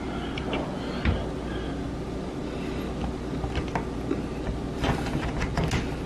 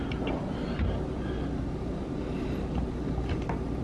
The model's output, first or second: second